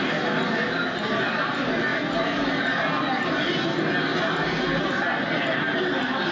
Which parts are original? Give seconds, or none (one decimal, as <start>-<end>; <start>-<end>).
0.0-6.3